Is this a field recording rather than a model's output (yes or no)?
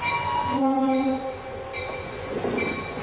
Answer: no